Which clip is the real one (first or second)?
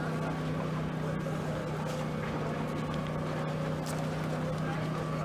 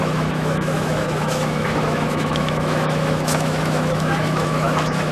first